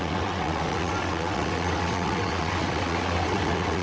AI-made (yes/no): yes